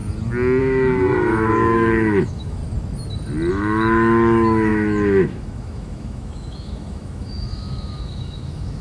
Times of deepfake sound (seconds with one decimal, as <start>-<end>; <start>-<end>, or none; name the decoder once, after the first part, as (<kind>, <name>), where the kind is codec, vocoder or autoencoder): 0.6-2.6 (autoencoder, DAC-VAE); 3.5-8.8